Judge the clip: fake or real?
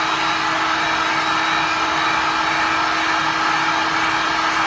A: real